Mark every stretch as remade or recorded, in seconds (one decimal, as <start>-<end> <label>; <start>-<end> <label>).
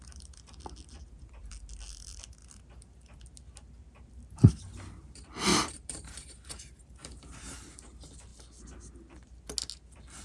0.0-5.5 recorded; 5.5-7.3 remade; 7.3-10.2 recorded